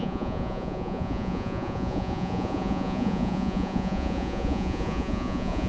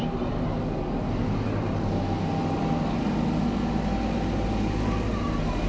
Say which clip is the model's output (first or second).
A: first